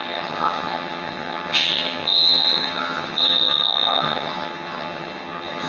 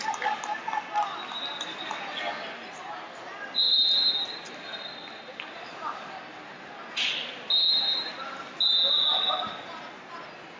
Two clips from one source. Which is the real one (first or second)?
second